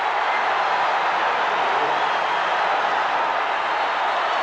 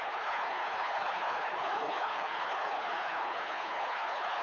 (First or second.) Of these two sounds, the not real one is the second